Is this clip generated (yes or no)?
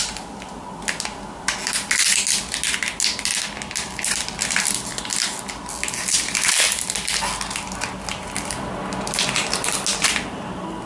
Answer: no